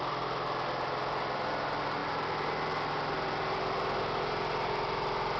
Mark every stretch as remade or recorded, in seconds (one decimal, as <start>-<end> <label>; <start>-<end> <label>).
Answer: 0.0-5.4 recorded